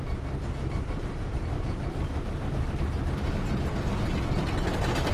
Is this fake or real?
real